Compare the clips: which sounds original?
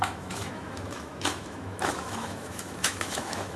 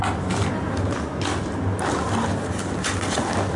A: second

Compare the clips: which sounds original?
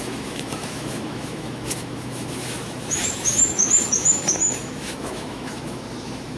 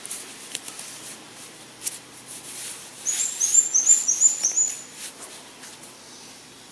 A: second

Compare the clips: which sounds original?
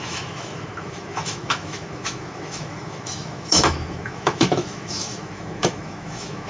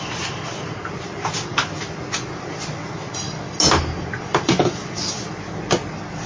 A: second